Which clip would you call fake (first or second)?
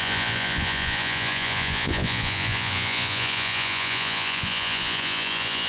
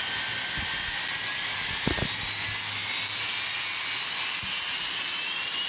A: first